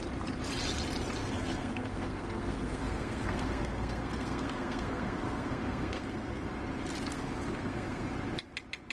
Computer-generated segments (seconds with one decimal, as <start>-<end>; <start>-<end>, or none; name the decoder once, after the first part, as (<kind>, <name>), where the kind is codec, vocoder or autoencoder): 1.2-6.5 (codec, SNAC); 7.1-8.1